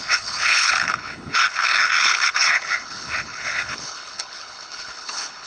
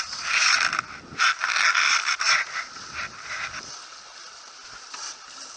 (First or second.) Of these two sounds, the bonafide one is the second